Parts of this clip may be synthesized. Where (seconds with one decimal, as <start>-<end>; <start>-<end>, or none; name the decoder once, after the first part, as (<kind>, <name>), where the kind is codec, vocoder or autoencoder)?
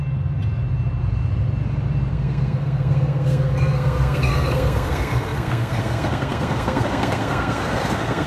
2.1-8.3 (codec, SNAC)